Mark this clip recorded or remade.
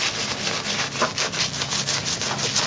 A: recorded